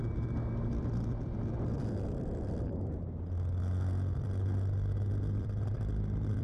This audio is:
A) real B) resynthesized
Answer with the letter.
B